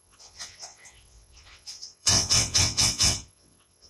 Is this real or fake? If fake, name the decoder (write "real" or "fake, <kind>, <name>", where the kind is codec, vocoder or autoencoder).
fake, vocoder, WaveNeXt